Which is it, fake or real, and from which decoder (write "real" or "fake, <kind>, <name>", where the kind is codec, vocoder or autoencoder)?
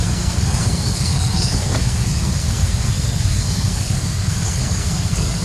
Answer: fake, codec, SNAC